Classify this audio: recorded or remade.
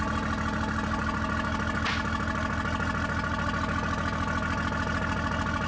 recorded